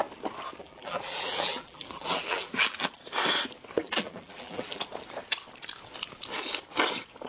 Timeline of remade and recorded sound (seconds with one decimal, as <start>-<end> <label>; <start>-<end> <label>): 0.0-0.6 recorded; 0.6-2.9 remade; 2.9-3.8 recorded; 3.8-4.8 remade; 4.8-7.3 recorded